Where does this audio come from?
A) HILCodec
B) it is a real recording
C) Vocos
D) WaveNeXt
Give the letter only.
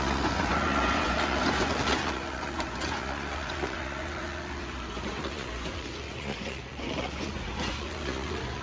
C